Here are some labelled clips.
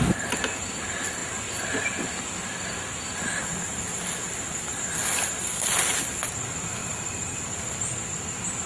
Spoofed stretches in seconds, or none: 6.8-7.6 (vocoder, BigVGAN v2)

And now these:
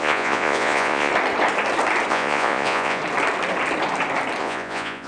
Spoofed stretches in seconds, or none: 0.0-1.1 (vocoder, Vocos); 2.1-3.0; 4.4-5.1

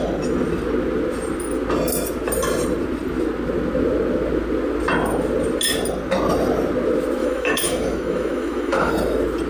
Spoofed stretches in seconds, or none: 7.2-8.9 (autoencoder, DAC-VAE)

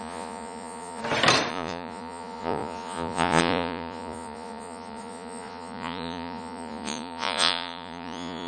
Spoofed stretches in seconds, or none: 0.0-1.0 (vocoder, Vocos); 1.5-8.5

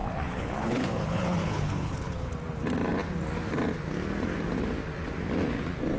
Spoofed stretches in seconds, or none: 0.0-2.3 (codec, HILCodec)